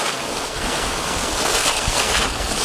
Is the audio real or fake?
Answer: fake